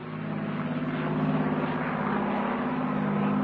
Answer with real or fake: real